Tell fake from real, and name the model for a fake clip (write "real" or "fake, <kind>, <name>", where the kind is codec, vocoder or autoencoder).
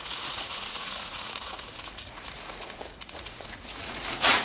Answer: fake, vocoder, Vocos